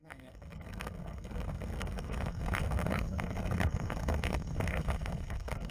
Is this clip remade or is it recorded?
remade